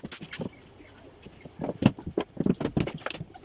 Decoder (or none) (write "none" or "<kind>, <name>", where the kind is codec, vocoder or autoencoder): vocoder, BigVGAN v2